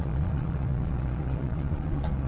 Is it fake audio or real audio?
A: fake